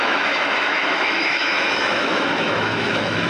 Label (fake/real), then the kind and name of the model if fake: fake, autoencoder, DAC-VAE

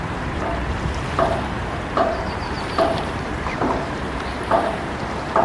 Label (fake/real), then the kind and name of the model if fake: fake, vocoder, BigVGAN v2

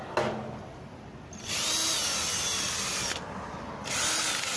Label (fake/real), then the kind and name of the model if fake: real